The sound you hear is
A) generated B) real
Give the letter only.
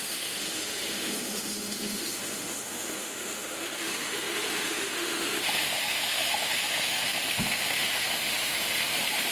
A